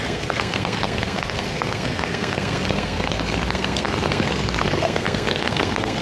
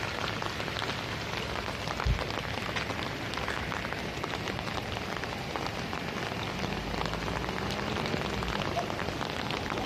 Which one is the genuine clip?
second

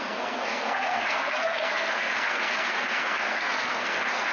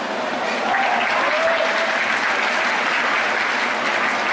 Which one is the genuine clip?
second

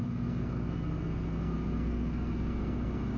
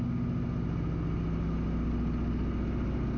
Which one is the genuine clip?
second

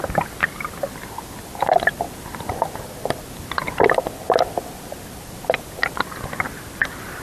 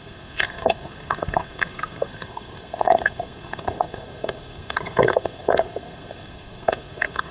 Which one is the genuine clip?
first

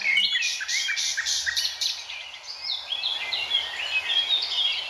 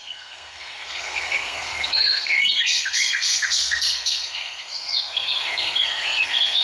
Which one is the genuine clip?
first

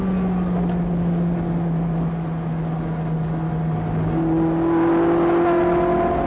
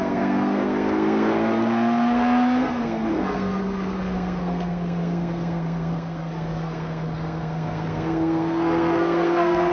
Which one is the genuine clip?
first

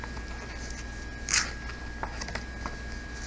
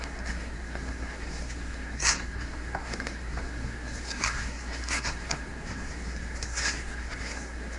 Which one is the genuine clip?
first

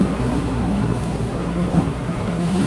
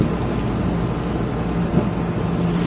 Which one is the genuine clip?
second